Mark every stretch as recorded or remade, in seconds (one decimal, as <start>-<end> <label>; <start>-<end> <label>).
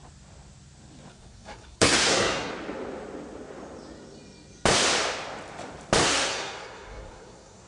0.0-1.1 recorded; 1.1-2.5 remade; 2.5-6.0 recorded; 6.0-7.7 remade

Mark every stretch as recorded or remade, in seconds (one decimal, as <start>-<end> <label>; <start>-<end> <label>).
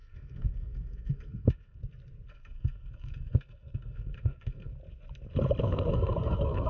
0.0-1.8 remade; 1.8-2.3 recorded; 2.3-4.7 remade; 4.7-5.6 recorded; 5.6-6.7 remade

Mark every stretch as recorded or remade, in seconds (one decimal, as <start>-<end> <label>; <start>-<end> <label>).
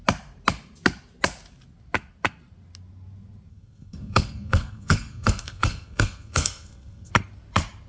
0.0-3.5 recorded; 3.5-7.1 remade; 7.1-7.9 recorded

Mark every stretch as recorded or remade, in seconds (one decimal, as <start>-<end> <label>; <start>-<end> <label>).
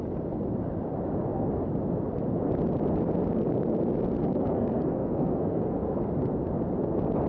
0.0-4.2 recorded; 4.2-6.0 remade; 6.0-7.3 recorded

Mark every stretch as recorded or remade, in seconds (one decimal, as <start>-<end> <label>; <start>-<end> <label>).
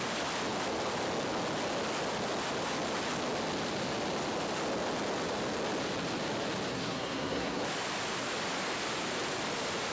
0.0-6.7 recorded; 6.7-7.6 remade; 7.6-9.9 recorded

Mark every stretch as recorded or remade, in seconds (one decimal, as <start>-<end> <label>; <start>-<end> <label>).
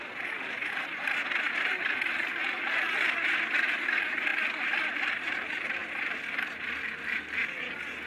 0.0-8.1 recorded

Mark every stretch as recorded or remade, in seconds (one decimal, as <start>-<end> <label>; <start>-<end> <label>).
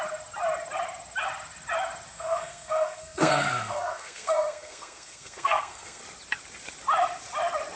0.0-2.1 recorded; 2.1-6.0 remade; 6.0-7.8 recorded